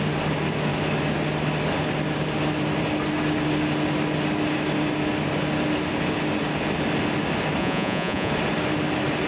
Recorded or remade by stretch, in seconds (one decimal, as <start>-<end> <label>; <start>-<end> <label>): 0.0-7.6 recorded; 7.6-8.3 remade; 8.3-9.3 recorded